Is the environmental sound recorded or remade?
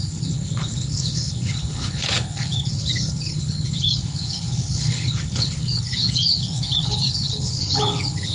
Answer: remade